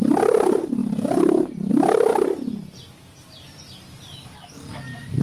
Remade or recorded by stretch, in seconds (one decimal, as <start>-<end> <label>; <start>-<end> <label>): 0.0-5.2 recorded